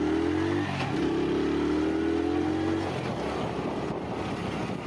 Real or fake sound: real